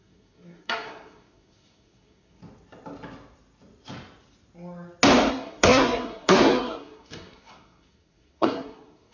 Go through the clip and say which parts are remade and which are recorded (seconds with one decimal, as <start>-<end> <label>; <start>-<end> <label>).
0.0-2.4 remade; 2.4-5.3 recorded; 5.3-9.1 remade